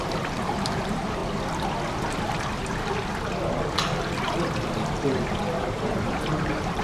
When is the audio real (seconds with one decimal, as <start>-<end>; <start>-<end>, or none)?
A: 1.2-4.7